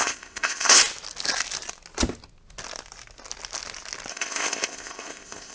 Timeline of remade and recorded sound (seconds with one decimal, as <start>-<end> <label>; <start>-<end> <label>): 0.0-0.8 remade; 0.8-4.1 recorded; 4.1-5.5 remade